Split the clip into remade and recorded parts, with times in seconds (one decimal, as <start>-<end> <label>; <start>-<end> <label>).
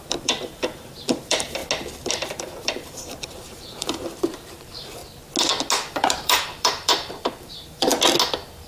0.0-1.6 remade; 1.6-2.1 recorded; 2.1-5.0 remade; 5.0-5.9 recorded; 5.9-7.9 remade; 7.9-8.7 recorded